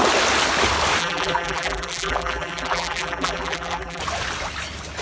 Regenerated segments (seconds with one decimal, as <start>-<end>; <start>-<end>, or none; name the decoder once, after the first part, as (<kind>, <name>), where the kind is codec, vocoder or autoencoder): 1.0-4.0 (vocoder, BigVGAN v2)